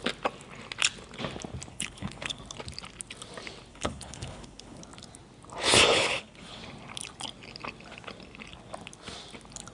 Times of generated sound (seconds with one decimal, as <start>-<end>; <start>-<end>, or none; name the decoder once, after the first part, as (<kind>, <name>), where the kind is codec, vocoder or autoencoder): 1.7-2.4 (codec, HILCodec); 3.7-4.8; 5.9-6.6